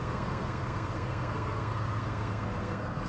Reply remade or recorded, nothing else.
remade